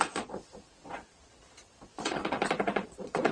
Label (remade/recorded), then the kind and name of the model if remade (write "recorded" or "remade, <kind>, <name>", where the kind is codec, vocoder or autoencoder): remade, vocoder, Vocos